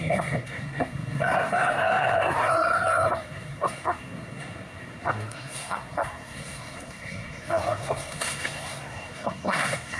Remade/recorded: remade